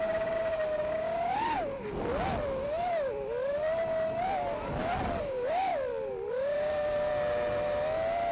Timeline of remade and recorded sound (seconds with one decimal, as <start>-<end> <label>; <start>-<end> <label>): 0.0-1.7 remade; 1.7-5.2 recorded; 5.2-5.7 remade; 5.7-6.3 recorded; 6.3-7.1 remade; 7.1-8.3 recorded